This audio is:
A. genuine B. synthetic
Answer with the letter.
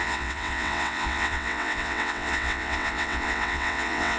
B